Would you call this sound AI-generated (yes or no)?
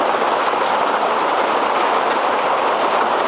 no